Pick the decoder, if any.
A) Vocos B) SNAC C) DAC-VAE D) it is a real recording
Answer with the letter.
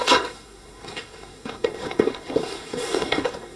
B